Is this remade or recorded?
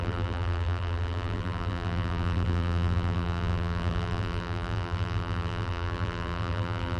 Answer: remade